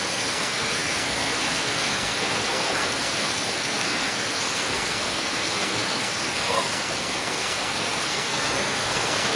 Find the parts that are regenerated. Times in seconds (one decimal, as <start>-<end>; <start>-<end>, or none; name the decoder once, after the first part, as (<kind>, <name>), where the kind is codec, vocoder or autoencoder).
0.0-9.4 (codec, SNAC)